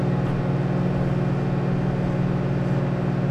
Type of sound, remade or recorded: recorded